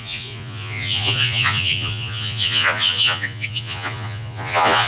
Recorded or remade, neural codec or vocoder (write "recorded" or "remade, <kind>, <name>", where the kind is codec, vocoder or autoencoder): remade, vocoder, Vocos